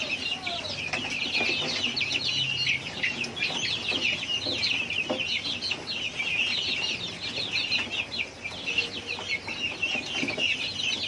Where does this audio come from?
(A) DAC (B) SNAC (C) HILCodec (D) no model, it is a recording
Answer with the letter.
D